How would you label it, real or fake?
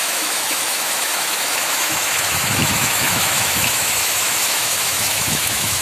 fake